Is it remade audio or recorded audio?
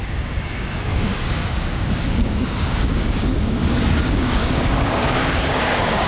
remade